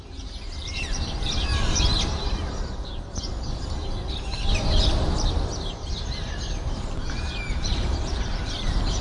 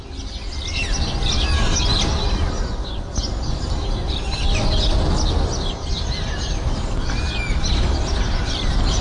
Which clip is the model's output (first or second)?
first